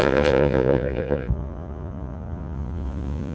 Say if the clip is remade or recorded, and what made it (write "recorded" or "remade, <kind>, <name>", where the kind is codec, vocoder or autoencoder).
remade, vocoder, Vocos